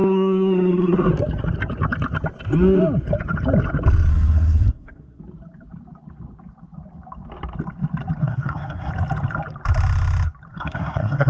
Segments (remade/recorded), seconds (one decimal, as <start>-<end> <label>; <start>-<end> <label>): 0.0-1.1 remade; 1.1-4.1 recorded; 4.1-5.2 remade; 5.2-8.2 recorded; 8.2-8.9 remade; 8.9-10.5 recorded; 10.5-11.3 remade